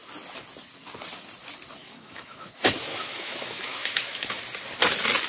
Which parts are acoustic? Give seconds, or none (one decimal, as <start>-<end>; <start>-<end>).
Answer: 0.0-1.8; 2.5-2.9; 4.4-5.3